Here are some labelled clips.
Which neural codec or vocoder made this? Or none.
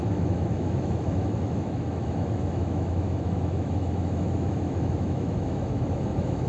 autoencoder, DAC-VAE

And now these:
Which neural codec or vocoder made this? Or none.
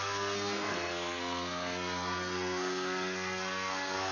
codec, SNAC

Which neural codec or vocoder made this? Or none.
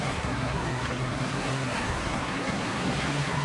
codec, SNAC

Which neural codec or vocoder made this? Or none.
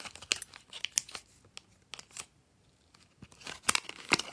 none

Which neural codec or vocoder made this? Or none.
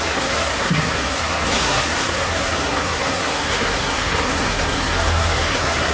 codec, SNAC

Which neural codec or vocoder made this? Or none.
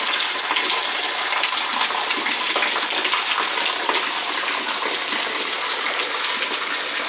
none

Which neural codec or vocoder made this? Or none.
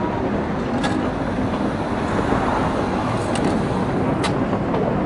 none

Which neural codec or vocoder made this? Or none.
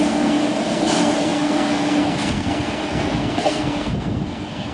codec, SNAC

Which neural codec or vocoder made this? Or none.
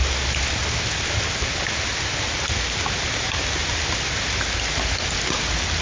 none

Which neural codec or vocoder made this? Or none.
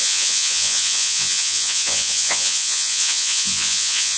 vocoder, Vocos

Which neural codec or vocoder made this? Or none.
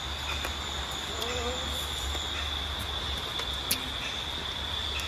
none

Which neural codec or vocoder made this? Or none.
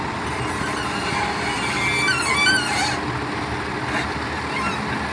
none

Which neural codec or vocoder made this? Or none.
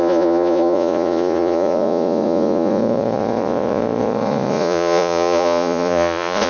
vocoder, Vocos